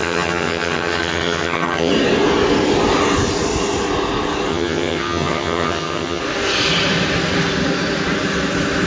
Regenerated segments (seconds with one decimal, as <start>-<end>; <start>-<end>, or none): 0.0-1.9; 4.5-6.2